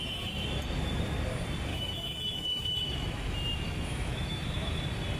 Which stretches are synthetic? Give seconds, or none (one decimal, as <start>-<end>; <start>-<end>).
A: 1.7-4.8